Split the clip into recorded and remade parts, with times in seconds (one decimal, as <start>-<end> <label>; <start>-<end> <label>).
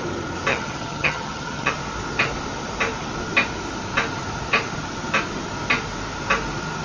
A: 0.0-0.5 recorded; 0.5-1.7 remade; 1.7-6.8 recorded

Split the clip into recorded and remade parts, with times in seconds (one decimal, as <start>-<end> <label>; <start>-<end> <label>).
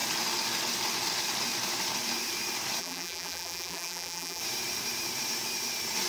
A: 0.0-2.8 recorded; 2.8-4.4 remade; 4.4-6.1 recorded